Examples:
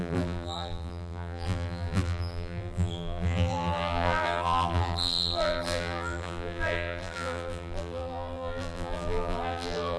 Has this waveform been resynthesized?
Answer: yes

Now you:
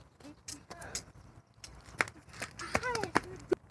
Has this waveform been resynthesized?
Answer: no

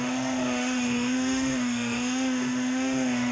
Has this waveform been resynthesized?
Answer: yes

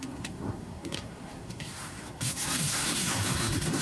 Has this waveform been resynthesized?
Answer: yes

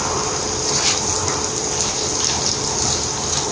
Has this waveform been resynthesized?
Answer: no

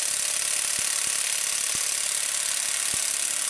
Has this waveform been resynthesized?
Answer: no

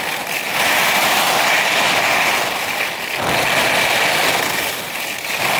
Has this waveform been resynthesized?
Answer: no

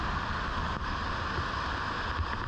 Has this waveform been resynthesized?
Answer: no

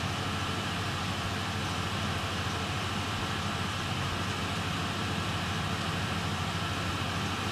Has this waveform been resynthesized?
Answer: no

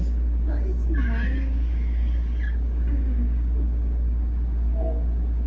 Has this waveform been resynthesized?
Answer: yes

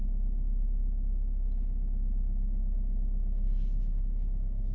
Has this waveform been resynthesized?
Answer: no